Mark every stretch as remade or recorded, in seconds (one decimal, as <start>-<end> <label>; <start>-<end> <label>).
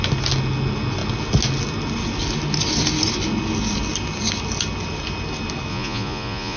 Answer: 0.0-5.7 recorded; 5.7-6.6 remade